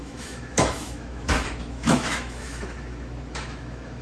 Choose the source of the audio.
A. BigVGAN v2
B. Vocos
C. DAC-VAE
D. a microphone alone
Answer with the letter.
C